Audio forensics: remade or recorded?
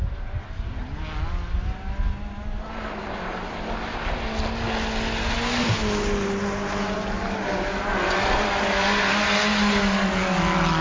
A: recorded